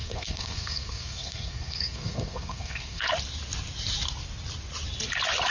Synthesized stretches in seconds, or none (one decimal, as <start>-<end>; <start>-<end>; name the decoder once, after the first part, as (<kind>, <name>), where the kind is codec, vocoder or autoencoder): 0.0-3.1 (codec, SNAC)